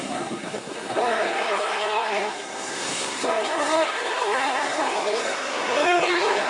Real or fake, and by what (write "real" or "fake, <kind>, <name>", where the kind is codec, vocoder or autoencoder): fake, codec, SNAC